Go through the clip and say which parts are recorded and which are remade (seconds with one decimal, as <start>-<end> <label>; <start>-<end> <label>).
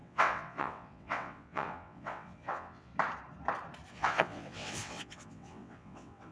0.0-2.9 remade; 2.9-3.9 recorded; 3.9-6.3 remade